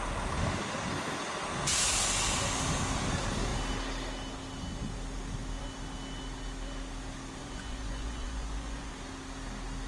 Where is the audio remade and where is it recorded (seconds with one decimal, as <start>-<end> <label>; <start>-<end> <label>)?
0.0-7.4 recorded; 7.4-8.9 remade; 8.9-9.9 recorded